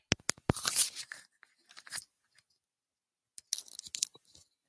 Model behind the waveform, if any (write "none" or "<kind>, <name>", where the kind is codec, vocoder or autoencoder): none